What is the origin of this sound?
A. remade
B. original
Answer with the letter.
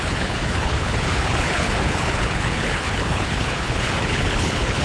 A